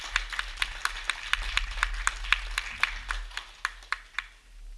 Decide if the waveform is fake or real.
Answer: real